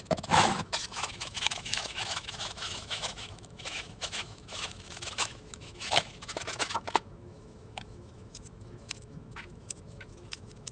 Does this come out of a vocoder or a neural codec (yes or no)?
yes